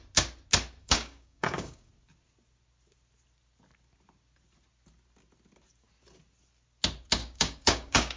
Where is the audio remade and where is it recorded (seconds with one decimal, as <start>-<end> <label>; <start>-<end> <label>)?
0.0-0.8 recorded; 0.8-1.9 remade; 1.9-7.2 recorded; 7.2-8.2 remade